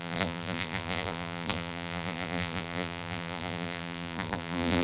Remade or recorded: remade